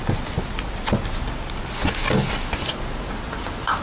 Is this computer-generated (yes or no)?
no